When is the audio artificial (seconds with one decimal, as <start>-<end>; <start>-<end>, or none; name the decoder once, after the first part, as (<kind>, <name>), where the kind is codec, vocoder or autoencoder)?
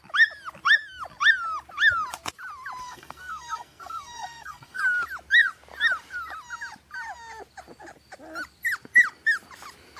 2.8-4.8 (codec, SNAC)